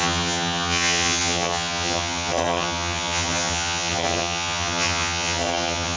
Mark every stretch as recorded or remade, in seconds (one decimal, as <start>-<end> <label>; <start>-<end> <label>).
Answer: 0.0-6.0 remade